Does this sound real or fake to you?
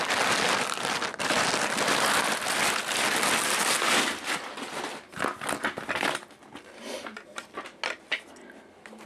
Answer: real